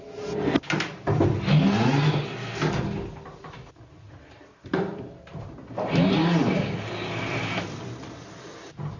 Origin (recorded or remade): recorded